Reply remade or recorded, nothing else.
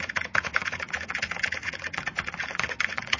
remade